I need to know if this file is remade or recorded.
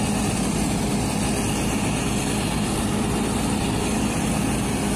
recorded